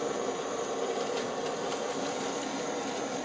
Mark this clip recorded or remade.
recorded